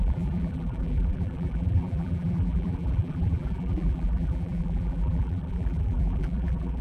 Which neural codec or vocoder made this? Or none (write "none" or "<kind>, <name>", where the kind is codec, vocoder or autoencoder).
vocoder, BigVGAN v2